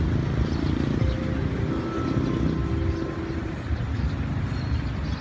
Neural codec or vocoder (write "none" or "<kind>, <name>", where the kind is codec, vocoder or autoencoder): none